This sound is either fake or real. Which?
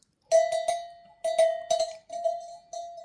real